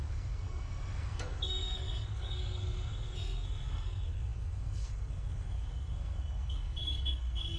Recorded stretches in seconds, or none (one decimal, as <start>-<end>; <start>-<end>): none